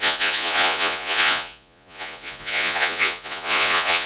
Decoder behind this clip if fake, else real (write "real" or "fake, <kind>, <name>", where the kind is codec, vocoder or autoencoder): fake, vocoder, Vocos